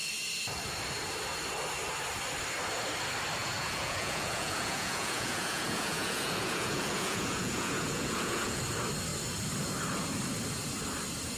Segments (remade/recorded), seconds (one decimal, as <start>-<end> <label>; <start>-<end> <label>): 0.0-3.4 recorded; 3.4-8.6 remade; 8.6-11.4 recorded